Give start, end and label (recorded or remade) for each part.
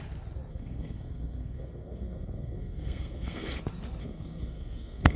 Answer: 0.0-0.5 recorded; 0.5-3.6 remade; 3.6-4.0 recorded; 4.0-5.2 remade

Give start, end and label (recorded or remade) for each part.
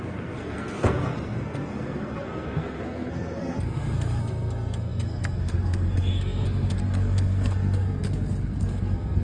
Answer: 0.0-9.2 remade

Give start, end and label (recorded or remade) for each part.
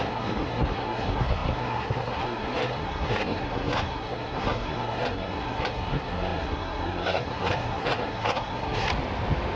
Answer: 0.0-8.9 remade; 8.9-9.6 recorded